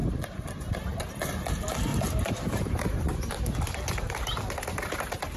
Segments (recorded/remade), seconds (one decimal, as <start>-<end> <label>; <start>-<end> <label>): 0.0-1.9 recorded; 1.9-4.1 remade; 4.1-5.4 recorded